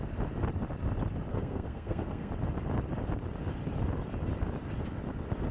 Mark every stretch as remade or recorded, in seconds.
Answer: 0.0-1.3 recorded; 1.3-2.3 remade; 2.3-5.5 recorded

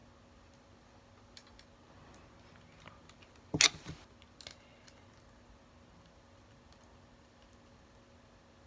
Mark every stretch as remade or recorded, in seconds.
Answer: 0.0-8.7 recorded

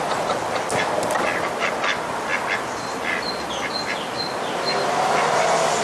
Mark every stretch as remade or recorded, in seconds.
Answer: 0.0-5.8 recorded

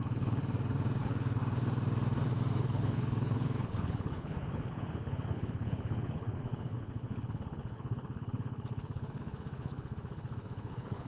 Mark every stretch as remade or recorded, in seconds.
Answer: 0.0-0.4 remade; 0.4-1.0 recorded; 1.0-1.4 remade; 1.4-2.6 recorded; 2.6-11.1 remade